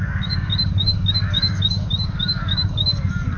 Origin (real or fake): fake